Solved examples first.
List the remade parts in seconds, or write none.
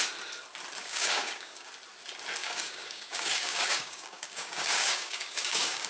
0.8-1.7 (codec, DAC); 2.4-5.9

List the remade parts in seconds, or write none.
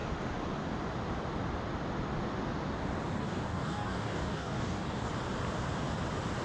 3.2-5.1 (codec, DAC)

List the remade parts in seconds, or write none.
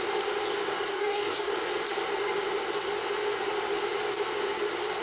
0.9-1.5 (codec, DAC)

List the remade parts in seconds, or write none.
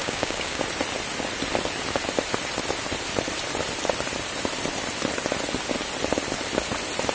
0.0-0.6 (codec, DAC)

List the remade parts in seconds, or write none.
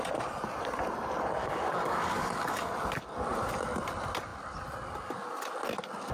1.4-2.7 (codec, DAC)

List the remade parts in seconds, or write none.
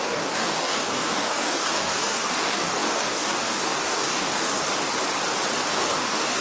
0.0-4.6 (codec, DAC); 5.7-6.4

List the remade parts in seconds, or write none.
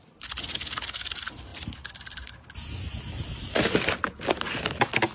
none